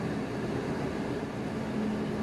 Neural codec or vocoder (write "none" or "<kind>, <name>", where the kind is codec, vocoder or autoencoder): none